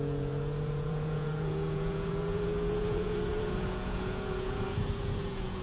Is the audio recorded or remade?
remade